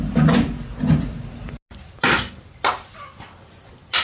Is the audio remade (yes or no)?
no